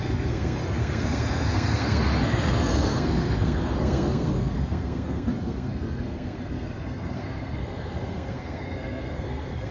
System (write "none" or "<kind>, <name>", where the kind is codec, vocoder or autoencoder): codec, SNAC